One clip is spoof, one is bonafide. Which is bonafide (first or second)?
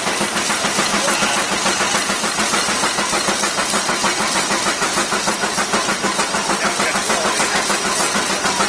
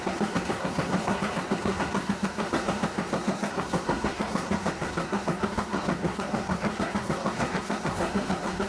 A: first